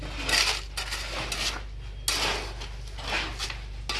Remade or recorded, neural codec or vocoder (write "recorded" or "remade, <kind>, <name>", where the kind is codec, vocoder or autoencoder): recorded